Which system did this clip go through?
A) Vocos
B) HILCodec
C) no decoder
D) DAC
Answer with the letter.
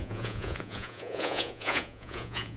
A